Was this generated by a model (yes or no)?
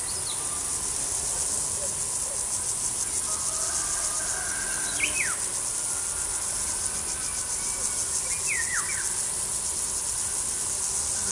no